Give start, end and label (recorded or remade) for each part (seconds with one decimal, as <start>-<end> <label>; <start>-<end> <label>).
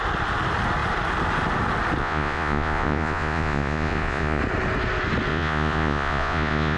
0.0-2.0 recorded; 2.0-4.4 remade; 4.4-5.3 recorded; 5.3-6.8 remade